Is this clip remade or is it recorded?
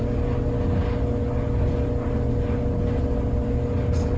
recorded